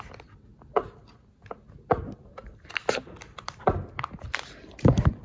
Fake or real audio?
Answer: real